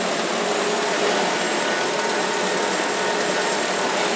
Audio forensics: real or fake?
real